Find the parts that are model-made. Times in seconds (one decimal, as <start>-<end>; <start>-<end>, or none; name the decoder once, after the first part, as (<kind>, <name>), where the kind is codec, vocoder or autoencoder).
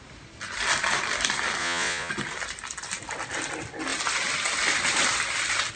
1.6-2.1 (vocoder, Vocos)